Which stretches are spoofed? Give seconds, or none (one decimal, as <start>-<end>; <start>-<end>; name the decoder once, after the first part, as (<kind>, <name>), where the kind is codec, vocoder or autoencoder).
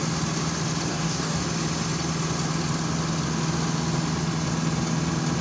0.9-1.4 (codec, DAC)